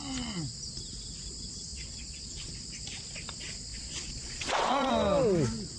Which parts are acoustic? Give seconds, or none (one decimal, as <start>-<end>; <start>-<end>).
0.0-1.7; 2.5-3.7; 4.9-5.8